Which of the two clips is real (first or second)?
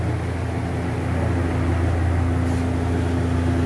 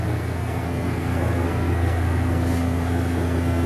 first